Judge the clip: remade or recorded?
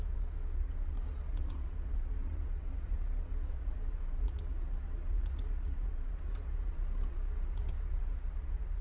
remade